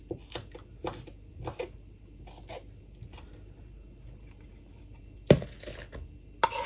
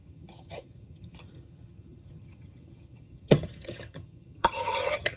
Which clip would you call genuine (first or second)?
first